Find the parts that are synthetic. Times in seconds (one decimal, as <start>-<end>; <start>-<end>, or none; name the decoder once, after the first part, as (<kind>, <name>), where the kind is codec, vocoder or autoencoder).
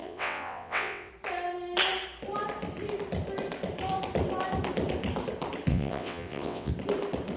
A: 0.0-1.1 (vocoder, WaveNeXt); 5.7-6.7